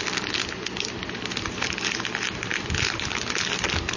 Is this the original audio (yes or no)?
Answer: yes